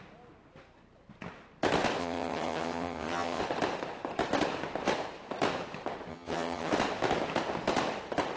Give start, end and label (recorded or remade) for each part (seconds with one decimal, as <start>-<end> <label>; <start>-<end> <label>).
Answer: 0.0-2.0 recorded; 2.0-3.4 remade; 3.4-6.1 recorded; 6.1-6.7 remade; 6.7-8.4 recorded